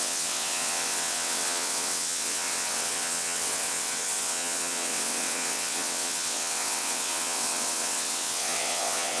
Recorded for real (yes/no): no